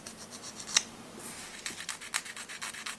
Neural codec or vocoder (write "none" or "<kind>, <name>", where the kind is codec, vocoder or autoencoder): none